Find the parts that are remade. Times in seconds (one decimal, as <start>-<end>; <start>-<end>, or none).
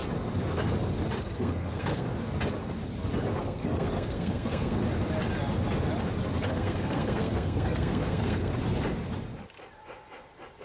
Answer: 1.2-2.1; 3.4-4.8; 6.5-8.5